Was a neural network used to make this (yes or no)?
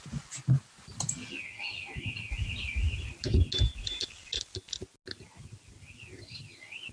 no